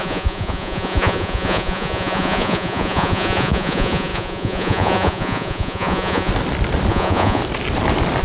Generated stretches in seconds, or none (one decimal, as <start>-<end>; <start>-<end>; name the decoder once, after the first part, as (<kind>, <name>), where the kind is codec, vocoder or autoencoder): 0.0-6.3 (vocoder, Vocos); 6.9-7.4